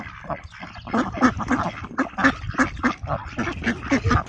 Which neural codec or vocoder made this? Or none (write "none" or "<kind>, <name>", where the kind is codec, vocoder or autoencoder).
none